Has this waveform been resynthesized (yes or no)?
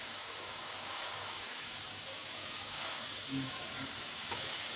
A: yes